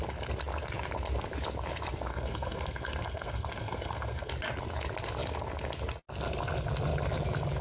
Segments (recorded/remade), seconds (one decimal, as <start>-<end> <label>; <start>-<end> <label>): 0.0-2.1 recorded; 2.1-4.3 remade; 4.3-7.6 recorded